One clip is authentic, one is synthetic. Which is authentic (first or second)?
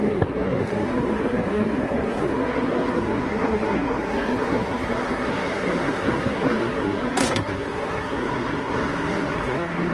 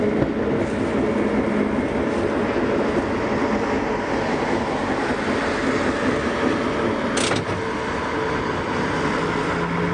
second